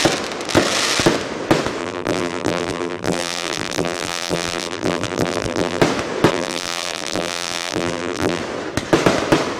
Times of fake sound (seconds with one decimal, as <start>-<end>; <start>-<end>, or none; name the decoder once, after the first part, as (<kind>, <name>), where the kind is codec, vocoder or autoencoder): 1.8-5.8 (vocoder, BigVGAN v2); 6.3-8.4